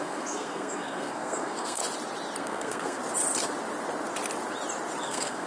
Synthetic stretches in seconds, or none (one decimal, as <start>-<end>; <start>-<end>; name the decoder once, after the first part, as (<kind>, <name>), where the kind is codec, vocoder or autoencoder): 0.0-1.8 (codec, SNAC); 2.4-3.0; 5.0-5.5